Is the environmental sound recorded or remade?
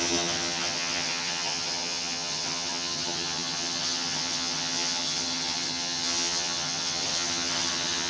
remade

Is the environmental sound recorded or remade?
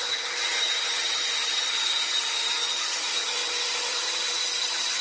remade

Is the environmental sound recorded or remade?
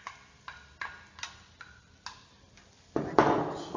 recorded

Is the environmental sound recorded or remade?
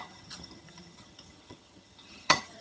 remade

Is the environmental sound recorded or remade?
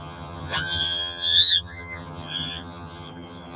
remade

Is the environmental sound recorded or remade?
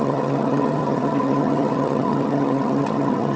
remade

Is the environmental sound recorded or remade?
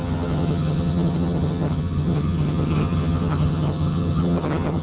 remade